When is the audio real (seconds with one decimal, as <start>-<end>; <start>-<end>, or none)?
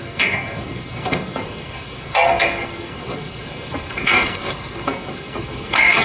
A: none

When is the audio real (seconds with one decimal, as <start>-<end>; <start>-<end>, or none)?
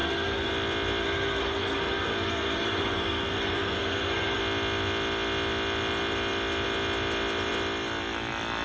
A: 0.5-1.0; 4.4-8.6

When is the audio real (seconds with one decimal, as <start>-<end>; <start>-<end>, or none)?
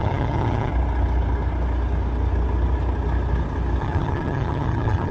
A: 0.7-3.8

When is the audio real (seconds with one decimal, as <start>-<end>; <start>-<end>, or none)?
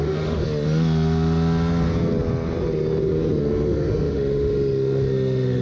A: 0.4-3.4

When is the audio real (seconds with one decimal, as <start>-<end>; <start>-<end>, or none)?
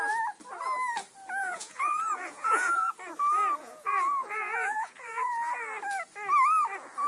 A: 0.0-1.4; 2.9-3.6; 5.5-7.1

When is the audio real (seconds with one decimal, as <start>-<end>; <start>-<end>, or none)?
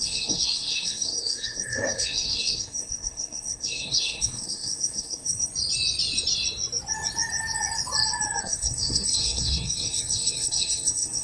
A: 5.5-8.4